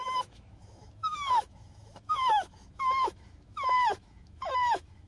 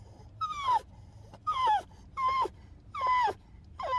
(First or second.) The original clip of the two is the second